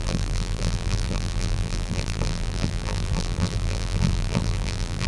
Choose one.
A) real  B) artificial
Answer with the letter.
B